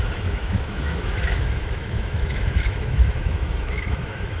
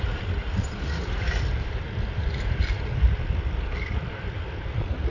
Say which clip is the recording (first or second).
second